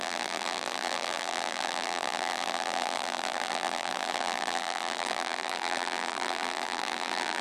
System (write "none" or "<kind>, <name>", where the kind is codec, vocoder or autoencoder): vocoder, BigVGAN v2